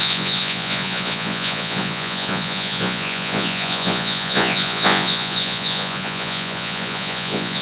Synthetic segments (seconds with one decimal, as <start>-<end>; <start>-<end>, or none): 0.0-7.6